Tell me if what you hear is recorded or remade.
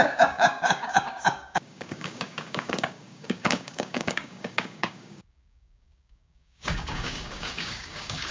remade